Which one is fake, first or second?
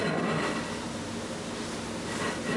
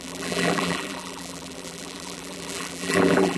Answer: second